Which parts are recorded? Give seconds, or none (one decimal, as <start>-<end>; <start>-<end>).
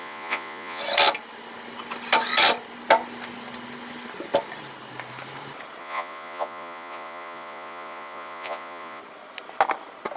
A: 0.8-5.8; 9.0-10.2